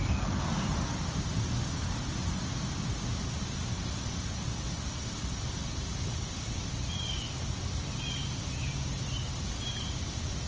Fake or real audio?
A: real